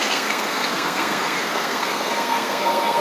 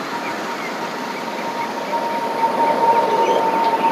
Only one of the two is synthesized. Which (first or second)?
first